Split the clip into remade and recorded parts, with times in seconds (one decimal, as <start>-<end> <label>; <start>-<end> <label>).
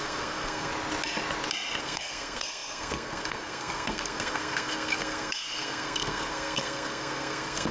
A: 0.0-0.7 remade; 0.7-1.8 recorded; 1.8-7.7 remade